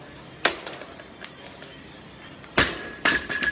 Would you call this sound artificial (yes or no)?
no